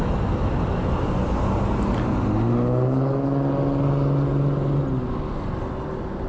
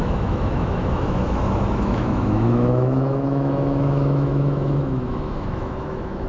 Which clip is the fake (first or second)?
second